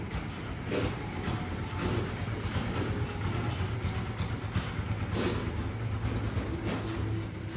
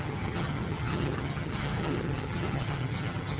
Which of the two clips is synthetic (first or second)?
second